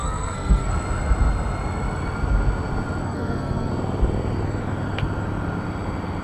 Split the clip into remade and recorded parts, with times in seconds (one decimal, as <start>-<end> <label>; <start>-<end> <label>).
0.0-0.7 remade; 0.7-3.0 recorded; 3.0-3.7 remade; 3.7-6.2 recorded